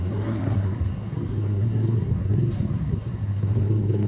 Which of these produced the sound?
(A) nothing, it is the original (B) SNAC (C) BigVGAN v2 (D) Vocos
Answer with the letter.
B